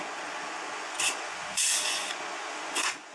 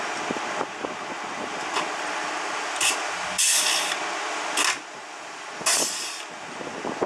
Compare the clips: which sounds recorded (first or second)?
second